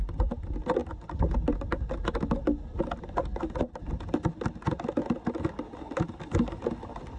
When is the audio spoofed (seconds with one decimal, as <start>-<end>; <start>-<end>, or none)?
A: none